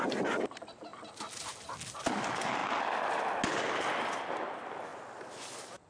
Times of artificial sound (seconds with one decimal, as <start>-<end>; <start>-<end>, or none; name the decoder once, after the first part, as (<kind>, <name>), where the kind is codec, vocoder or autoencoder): none